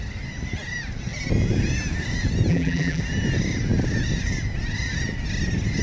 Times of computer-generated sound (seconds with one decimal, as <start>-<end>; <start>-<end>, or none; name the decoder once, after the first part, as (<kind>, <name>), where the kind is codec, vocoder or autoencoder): 2.5-3.0 (vocoder, BigVGAN v2)